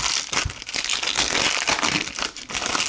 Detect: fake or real real